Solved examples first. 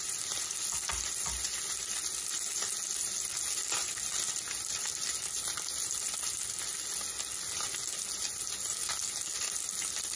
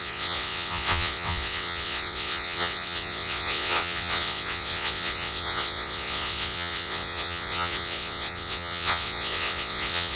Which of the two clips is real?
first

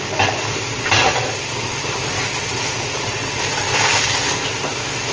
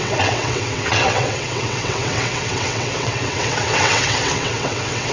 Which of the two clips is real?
first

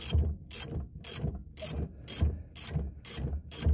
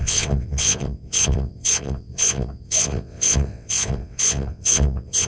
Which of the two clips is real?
first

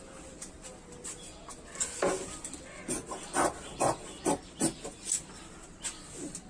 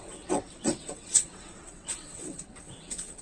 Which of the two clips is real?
first